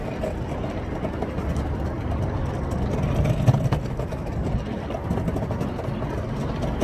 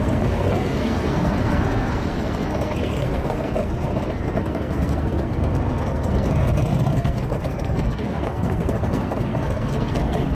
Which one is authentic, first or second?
first